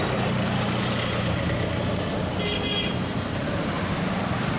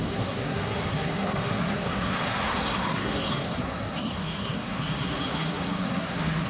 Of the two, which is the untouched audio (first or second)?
first